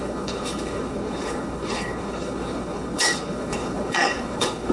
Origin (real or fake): fake